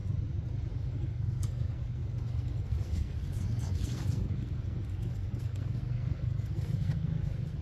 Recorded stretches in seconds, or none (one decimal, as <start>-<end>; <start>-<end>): 0.0-0.7